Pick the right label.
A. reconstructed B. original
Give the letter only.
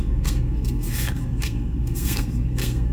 A